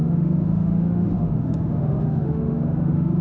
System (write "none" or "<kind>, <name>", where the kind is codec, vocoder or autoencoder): autoencoder, DAC-VAE